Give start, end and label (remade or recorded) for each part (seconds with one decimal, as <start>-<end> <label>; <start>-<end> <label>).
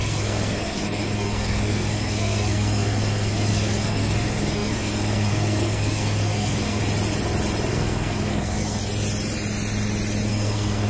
0.0-6.8 remade; 6.8-7.7 recorded; 7.7-8.8 remade; 8.8-10.3 recorded; 10.3-10.9 remade